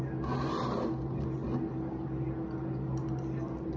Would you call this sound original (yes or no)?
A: yes